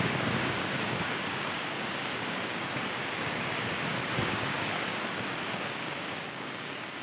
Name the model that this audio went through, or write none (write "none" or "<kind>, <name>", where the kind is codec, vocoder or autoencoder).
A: codec, DAC